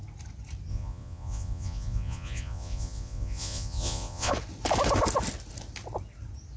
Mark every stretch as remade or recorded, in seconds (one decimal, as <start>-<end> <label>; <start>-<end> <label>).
0.0-0.7 recorded; 0.7-4.3 remade; 4.3-6.6 recorded